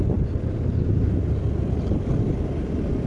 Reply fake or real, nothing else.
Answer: fake